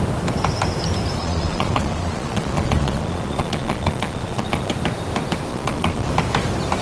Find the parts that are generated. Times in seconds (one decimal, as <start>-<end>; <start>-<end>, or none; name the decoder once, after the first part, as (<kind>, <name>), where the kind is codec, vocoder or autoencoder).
1.2-4.7 (vocoder, Vocos); 5.5-6.1